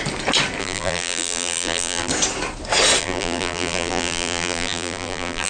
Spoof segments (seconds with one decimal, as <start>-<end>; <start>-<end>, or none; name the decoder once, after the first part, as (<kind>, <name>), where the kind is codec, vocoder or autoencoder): 0.6-2.1 (vocoder, BigVGAN v2); 3.0-5.5